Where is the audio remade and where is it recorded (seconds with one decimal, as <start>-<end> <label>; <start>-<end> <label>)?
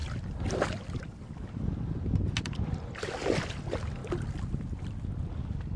0.0-5.8 recorded